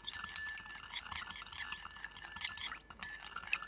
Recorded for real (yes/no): yes